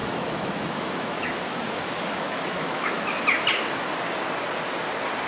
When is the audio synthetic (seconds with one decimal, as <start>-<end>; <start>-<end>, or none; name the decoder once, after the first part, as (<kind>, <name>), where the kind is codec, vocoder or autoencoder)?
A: 0.0-3.2 (autoencoder, DAC-VAE)